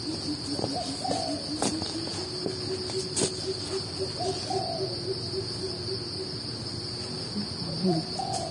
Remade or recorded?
recorded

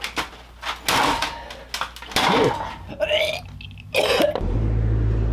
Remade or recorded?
recorded